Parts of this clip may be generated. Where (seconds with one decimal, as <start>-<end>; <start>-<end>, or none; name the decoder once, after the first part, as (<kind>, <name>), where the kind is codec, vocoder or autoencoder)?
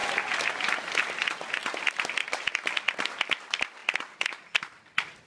none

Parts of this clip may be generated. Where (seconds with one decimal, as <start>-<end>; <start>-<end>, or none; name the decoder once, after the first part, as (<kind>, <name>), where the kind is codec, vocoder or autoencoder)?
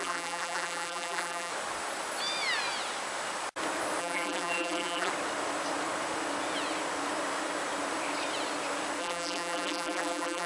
0.0-1.5 (vocoder, BigVGAN v2); 4.0-5.1; 9.0-10.5